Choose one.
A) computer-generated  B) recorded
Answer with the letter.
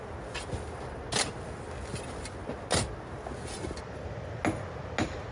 B